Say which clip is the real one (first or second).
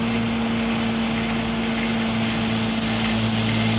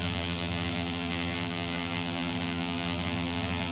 first